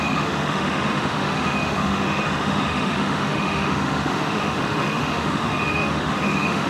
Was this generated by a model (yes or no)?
yes